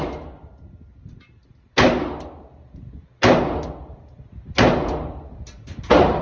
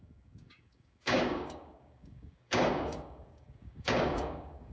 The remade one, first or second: second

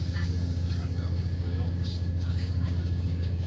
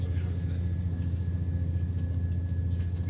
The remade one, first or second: first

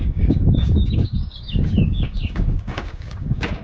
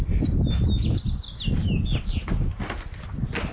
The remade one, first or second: first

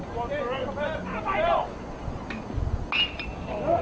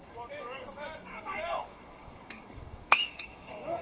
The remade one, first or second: second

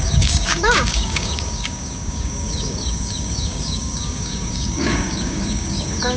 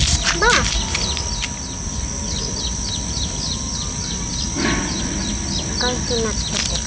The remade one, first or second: first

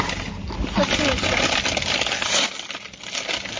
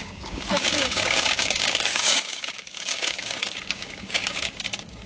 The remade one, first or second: second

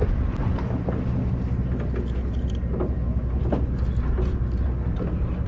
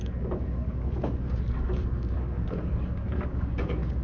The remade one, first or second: second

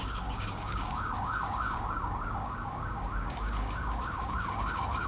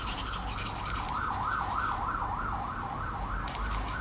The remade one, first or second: first